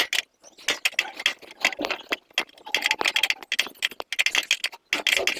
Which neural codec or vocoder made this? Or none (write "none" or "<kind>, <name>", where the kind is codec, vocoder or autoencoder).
none